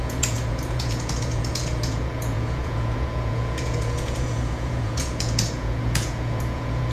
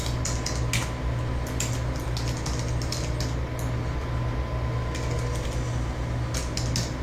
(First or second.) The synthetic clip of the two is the first